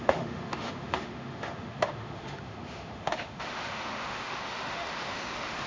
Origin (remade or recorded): remade